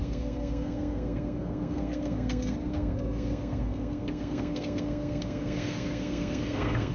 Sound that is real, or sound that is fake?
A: fake